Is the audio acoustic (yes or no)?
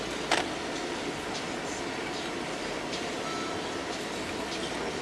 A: yes